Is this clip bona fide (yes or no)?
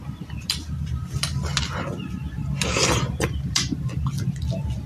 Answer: yes